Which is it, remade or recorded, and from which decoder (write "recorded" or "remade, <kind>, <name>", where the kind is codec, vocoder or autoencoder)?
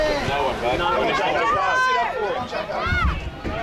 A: recorded